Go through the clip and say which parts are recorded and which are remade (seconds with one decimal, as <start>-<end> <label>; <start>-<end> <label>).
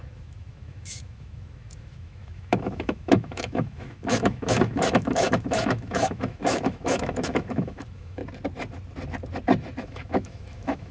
0.0-8.2 remade; 8.2-9.8 recorded; 9.8-10.9 remade